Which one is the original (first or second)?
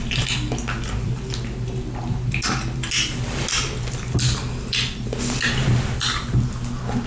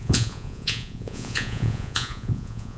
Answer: first